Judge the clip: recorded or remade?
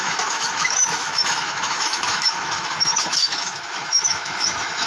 remade